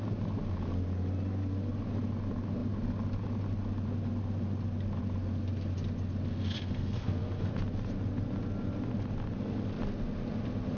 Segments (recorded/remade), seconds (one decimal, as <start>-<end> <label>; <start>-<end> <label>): 0.0-6.3 recorded; 6.3-7.5 remade; 7.5-10.8 recorded

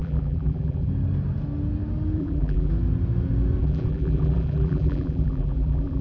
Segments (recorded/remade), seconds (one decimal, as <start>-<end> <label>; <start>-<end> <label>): 0.0-0.9 remade; 0.9-2.2 recorded; 2.2-2.7 remade; 2.7-3.6 recorded; 3.6-6.0 remade

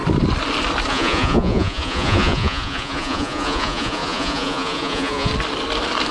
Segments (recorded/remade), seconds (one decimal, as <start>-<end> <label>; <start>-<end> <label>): 0.0-0.9 recorded; 0.9-5.3 remade; 5.3-6.1 recorded

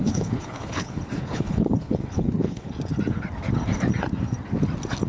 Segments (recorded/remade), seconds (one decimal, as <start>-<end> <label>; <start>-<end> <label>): 0.0-2.7 remade; 2.7-5.1 recorded

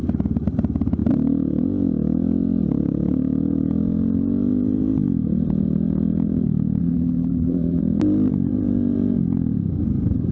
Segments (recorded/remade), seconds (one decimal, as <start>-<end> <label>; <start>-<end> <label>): 0.0-6.8 recorded; 6.8-7.8 remade; 7.8-10.3 recorded

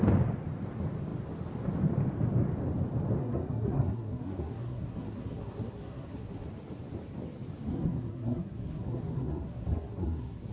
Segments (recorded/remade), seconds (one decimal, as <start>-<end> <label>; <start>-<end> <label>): 0.0-3.2 recorded; 3.2-6.5 remade; 6.5-7.7 recorded; 7.7-10.5 remade

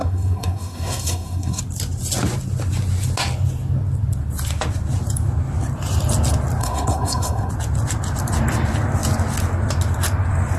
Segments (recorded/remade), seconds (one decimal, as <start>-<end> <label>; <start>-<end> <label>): 0.0-1.6 remade; 1.6-6.6 recorded; 6.6-7.5 remade; 7.5-10.6 recorded